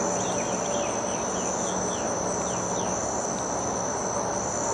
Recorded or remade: recorded